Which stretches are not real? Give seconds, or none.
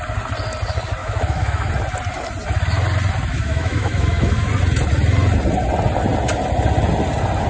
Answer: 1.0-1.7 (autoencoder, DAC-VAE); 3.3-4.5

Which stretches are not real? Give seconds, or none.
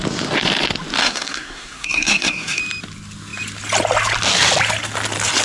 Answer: 1.0-2.6 (codec, SNAC)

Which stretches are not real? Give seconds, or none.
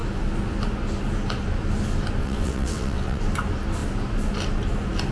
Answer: 2.2-3.2 (vocoder, WaveNeXt)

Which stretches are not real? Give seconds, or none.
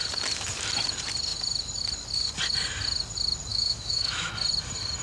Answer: 3.5-4.3 (autoencoder, DAC-VAE)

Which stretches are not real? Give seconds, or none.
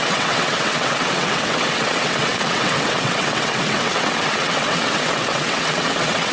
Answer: 0.0-6.3 (vocoder, WaveNeXt)